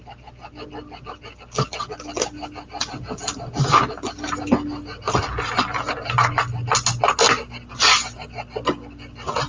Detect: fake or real real